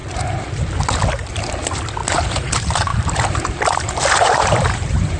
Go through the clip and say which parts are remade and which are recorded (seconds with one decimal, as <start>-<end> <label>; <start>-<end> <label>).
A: 0.0-0.5 remade; 0.5-2.0 recorded; 2.0-2.5 remade; 2.5-2.9 recorded; 2.9-5.2 remade